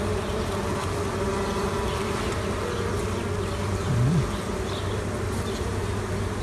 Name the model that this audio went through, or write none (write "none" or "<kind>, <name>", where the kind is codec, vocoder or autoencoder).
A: none